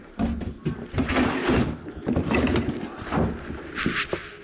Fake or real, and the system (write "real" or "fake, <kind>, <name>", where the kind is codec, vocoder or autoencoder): real